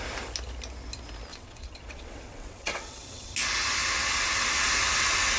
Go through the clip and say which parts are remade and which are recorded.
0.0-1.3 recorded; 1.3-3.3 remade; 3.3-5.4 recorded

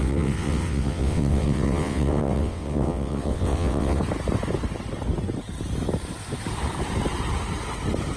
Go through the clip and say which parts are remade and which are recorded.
0.0-4.0 remade; 4.0-8.2 recorded

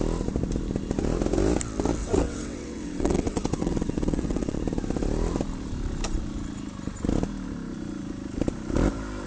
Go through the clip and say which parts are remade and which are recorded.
0.0-2.0 recorded; 2.0-4.6 remade; 4.6-9.3 recorded

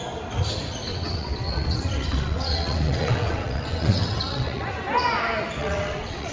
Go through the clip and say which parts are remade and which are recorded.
0.0-0.9 recorded; 0.9-4.7 remade; 4.7-5.6 recorded; 5.6-6.3 remade

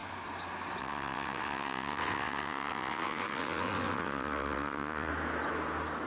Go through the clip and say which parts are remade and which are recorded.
0.0-0.8 recorded; 0.8-5.1 remade; 5.1-6.1 recorded